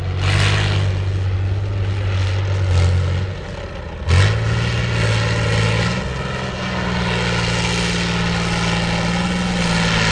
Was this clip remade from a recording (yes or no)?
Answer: no